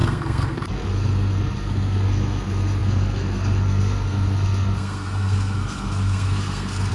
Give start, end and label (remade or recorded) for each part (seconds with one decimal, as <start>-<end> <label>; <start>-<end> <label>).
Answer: 0.0-6.9 remade

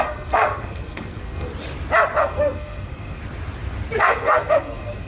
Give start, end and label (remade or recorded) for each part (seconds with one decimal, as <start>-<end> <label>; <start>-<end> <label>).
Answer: 0.0-1.5 remade; 1.5-2.2 recorded; 2.2-3.2 remade; 3.2-4.0 recorded; 4.0-5.1 remade

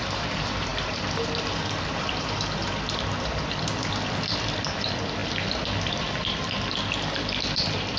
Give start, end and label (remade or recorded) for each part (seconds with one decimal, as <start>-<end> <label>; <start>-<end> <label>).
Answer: 0.0-5.2 remade; 5.2-5.9 recorded; 5.9-8.0 remade

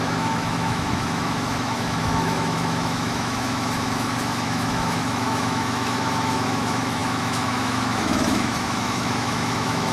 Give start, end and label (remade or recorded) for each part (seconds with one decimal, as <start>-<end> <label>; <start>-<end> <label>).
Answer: 0.0-9.9 remade

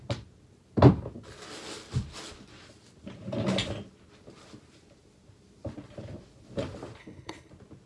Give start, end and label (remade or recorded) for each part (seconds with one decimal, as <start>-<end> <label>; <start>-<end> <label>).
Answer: 0.0-7.0 recorded; 7.0-7.5 remade; 7.5-7.9 recorded

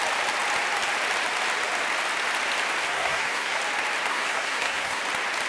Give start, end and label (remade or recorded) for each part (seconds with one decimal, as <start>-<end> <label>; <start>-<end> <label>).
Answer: 0.0-2.9 recorded; 2.9-3.6 remade; 3.6-4.1 recorded; 4.1-5.0 remade; 5.0-5.5 recorded

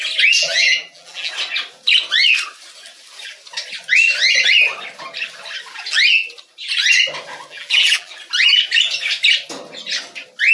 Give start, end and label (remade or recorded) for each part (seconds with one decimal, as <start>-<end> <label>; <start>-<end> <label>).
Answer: 0.0-0.4 recorded; 0.4-1.3 remade; 1.3-7.5 recorded; 7.5-8.1 remade; 8.1-10.5 recorded